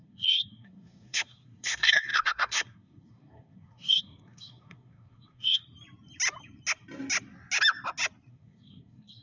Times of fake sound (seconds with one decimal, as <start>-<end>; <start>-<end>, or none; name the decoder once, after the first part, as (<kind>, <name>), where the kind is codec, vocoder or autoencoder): 0.0-5.6 (codec, SNAC); 8.3-9.2